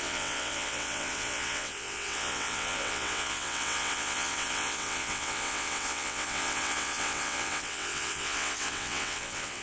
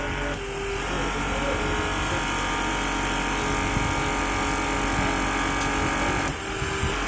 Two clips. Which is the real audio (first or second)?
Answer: second